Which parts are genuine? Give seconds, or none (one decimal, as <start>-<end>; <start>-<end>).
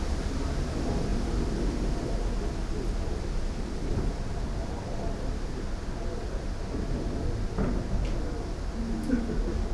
0.0-9.7